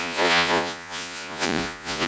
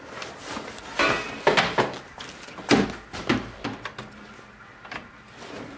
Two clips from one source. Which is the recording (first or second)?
second